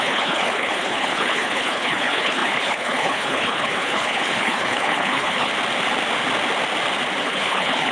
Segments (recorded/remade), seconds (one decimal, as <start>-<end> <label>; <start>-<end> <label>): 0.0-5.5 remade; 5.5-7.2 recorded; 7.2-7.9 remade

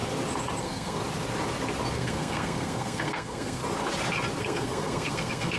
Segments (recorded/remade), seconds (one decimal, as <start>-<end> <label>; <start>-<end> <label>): 0.0-0.6 recorded; 0.6-1.0 remade; 1.0-1.9 recorded; 1.9-3.6 remade; 3.6-4.4 recorded; 4.4-5.6 remade

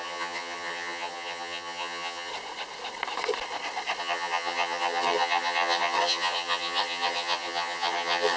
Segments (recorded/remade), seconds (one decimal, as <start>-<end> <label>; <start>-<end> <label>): 0.0-2.3 remade; 2.3-4.0 recorded; 4.0-8.4 remade

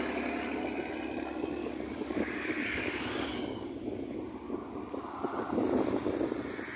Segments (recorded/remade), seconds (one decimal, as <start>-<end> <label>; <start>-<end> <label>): 0.0-1.6 recorded; 1.6-4.2 remade; 4.2-6.8 recorded